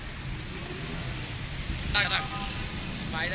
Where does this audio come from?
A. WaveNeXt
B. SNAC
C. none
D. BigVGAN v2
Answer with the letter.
C